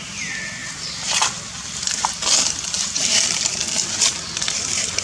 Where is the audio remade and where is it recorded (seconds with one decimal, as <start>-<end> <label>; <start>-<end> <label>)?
0.0-0.6 recorded; 0.6-3.6 remade; 3.6-5.0 recorded